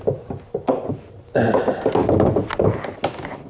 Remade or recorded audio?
recorded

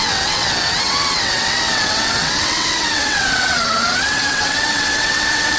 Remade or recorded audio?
remade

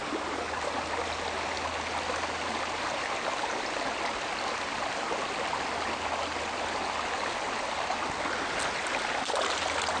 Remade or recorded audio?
recorded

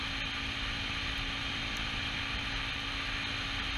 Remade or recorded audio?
recorded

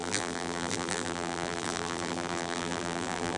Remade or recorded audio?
remade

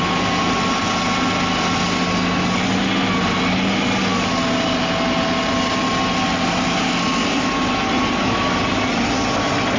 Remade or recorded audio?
recorded